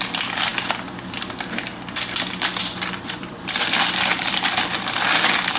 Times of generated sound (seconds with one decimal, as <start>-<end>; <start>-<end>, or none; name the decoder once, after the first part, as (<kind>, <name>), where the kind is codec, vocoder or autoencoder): 0.0-0.5 (vocoder, BigVGAN v2); 1.0-1.7; 2.6-5.6